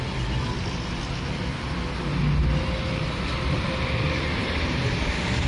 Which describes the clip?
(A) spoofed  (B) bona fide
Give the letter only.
B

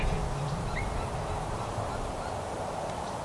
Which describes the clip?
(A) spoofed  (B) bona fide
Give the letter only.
B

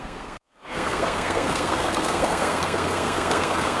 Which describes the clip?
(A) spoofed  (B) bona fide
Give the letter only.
A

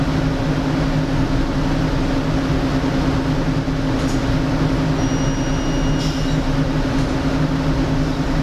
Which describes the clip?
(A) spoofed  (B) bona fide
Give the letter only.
B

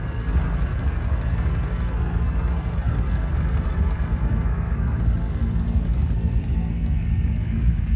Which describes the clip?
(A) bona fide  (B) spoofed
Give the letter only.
B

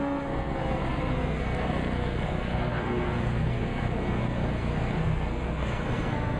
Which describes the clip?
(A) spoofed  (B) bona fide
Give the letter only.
A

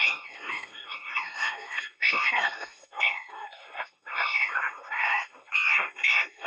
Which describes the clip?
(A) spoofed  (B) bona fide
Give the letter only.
A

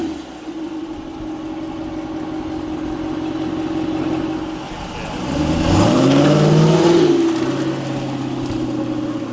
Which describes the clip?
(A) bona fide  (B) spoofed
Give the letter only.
A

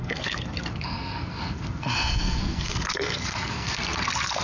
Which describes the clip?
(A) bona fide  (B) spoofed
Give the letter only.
B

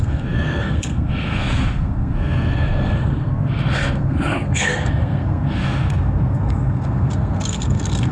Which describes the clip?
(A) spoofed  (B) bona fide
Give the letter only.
A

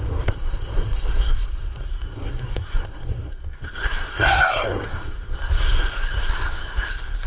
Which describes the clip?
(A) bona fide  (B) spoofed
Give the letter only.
B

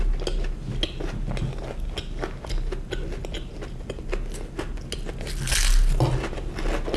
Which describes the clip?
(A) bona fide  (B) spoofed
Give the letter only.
A